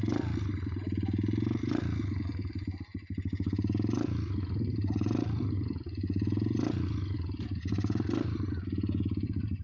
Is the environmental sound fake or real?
real